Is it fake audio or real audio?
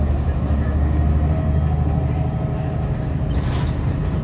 real